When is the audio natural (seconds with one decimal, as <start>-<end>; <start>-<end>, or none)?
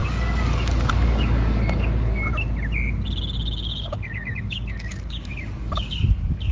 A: 2.3-3.9